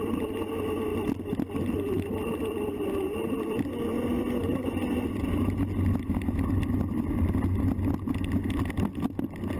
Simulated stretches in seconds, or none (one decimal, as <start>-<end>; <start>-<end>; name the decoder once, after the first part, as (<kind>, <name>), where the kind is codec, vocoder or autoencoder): none